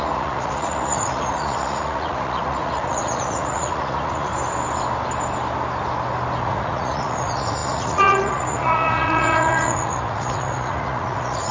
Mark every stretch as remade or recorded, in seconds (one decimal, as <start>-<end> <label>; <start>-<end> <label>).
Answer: 0.0-4.3 remade; 4.3-6.4 recorded; 6.4-11.5 remade